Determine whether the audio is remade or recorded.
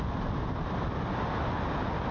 recorded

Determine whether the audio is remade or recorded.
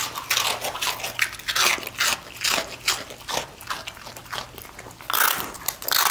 recorded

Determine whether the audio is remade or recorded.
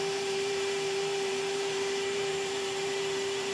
remade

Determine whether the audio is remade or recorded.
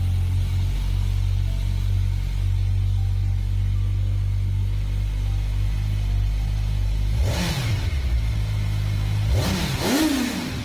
recorded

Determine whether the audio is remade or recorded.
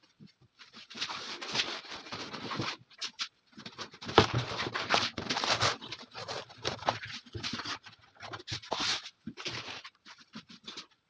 remade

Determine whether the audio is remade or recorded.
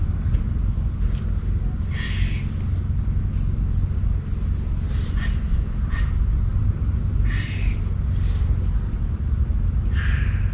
recorded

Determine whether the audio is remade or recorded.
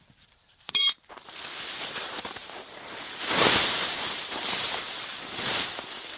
remade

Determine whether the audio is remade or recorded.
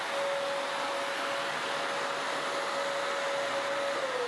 recorded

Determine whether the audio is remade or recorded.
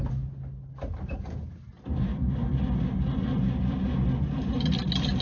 recorded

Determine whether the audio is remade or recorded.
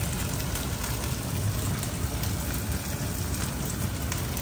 recorded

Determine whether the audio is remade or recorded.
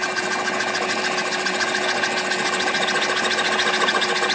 recorded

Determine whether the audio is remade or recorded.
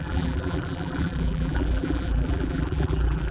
remade